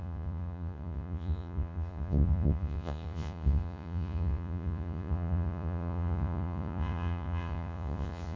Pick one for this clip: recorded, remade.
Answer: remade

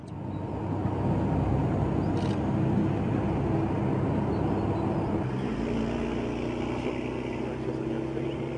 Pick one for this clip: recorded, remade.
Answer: recorded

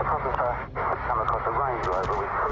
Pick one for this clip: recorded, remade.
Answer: recorded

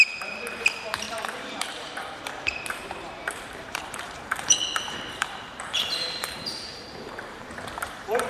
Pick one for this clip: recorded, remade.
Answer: remade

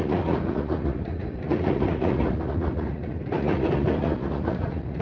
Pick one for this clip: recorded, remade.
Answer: remade